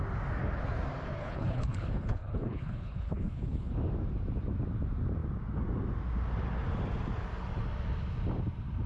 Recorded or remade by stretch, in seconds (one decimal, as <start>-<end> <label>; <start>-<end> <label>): 0.0-1.2 recorded; 1.2-3.7 remade; 3.7-8.9 recorded